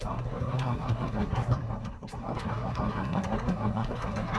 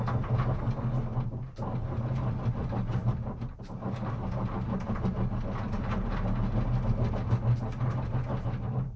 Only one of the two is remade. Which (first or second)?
first